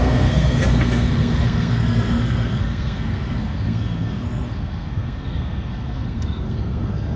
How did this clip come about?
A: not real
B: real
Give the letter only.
A